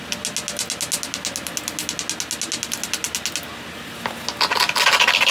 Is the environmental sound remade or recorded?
recorded